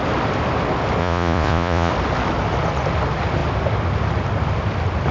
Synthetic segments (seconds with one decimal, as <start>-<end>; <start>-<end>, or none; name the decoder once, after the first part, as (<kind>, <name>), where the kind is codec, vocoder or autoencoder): 1.0-1.9 (vocoder, Vocos)